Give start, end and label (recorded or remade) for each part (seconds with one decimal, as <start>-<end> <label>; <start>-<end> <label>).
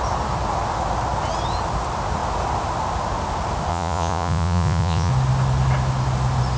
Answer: 0.0-3.7 recorded; 3.7-5.1 remade; 5.1-6.6 recorded